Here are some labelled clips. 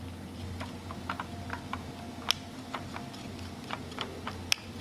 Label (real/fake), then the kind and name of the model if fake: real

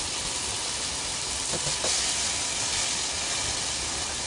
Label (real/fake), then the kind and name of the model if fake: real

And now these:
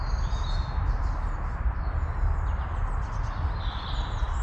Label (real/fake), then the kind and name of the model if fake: real